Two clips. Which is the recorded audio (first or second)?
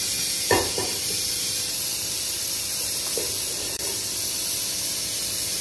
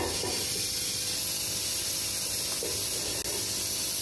second